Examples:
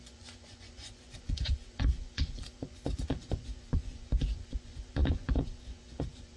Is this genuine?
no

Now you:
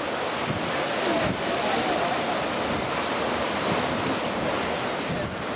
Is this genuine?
yes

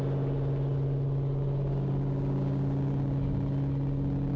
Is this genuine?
yes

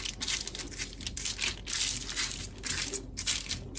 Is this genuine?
yes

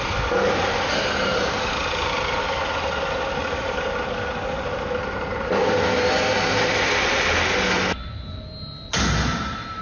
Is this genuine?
yes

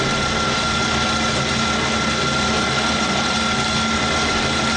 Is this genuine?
yes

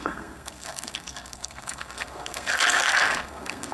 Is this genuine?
no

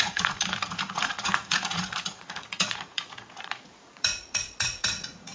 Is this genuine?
no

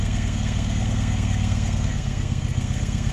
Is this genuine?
no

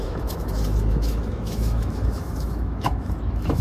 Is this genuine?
no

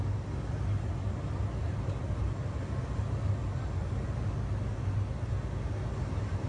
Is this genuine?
yes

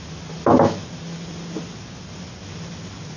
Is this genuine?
yes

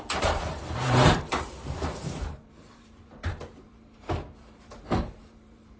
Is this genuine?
no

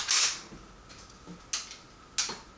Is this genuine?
yes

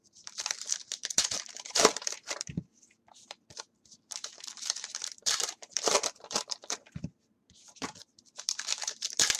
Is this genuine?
no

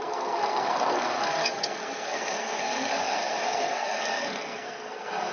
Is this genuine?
no